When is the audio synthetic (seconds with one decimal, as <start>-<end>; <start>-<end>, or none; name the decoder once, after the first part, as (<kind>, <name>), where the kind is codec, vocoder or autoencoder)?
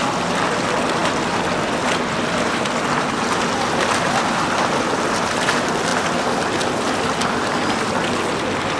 none